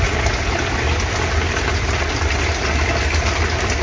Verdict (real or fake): real